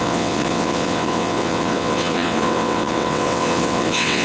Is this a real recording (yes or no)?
no